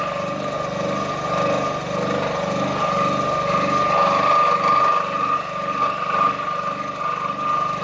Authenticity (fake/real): real